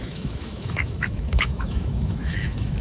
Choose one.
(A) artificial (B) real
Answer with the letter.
A